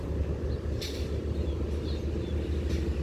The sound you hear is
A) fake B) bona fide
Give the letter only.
B